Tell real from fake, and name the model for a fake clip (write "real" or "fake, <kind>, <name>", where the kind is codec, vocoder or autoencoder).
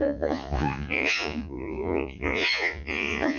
fake, vocoder, Vocos